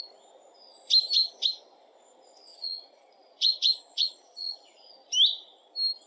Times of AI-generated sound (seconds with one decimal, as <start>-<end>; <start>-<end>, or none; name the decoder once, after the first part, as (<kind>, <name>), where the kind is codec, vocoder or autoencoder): 2.5-4.9 (vocoder, Vocos)